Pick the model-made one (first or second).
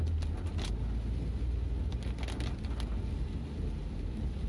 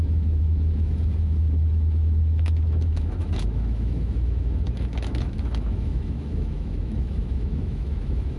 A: second